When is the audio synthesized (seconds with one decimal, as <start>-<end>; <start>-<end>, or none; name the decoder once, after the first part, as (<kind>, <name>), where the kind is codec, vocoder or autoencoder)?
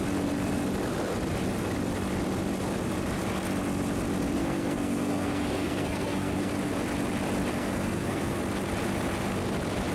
4.4-6.5 (codec, SNAC); 7.5-8.4